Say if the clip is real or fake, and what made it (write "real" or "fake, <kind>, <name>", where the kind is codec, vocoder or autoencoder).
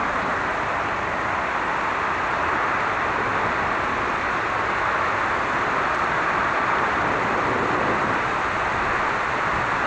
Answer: real